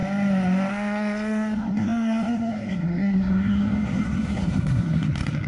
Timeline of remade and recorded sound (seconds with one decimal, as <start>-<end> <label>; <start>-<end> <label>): 0.0-0.7 recorded; 0.7-5.5 remade